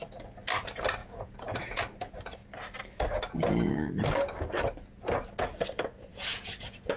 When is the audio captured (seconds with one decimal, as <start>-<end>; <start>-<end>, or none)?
0.0-1.0; 1.8-6.1